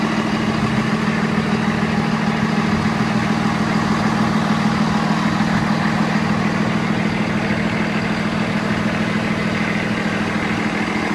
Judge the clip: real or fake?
real